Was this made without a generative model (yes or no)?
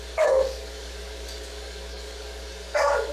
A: no